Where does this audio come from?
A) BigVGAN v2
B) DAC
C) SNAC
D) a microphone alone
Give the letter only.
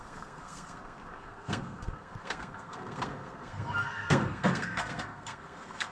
C